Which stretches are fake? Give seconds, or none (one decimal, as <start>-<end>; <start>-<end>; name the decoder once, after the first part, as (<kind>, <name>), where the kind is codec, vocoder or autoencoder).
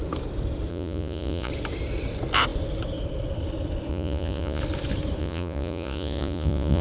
0.7-1.5 (vocoder, Vocos); 3.9-4.6; 5.2-6.8